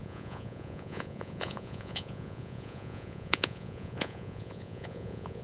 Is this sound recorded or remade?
remade